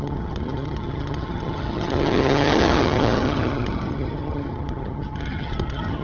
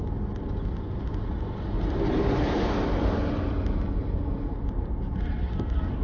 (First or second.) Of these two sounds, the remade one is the first